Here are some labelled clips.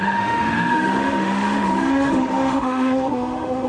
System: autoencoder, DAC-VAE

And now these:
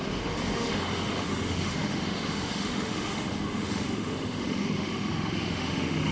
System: autoencoder, DAC-VAE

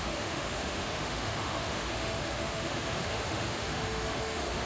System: autoencoder, DAC-VAE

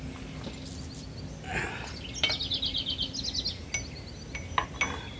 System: none